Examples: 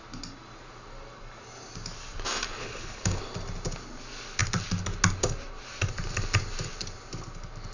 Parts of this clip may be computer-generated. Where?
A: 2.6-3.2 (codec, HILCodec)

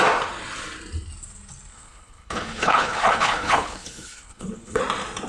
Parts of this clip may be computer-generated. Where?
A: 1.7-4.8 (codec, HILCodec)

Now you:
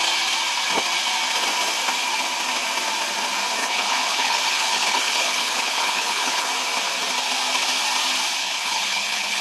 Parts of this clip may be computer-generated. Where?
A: 3.6-6.5 (codec, HILCodec); 8.4-9.4

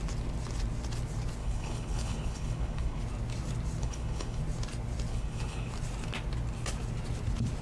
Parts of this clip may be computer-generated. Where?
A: 1.4-3.0 (codec, HILCodec); 3.8-4.4; 5.1-5.7

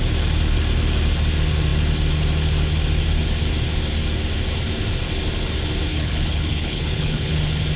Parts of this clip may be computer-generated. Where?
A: 5.9-7.3 (codec, HILCodec)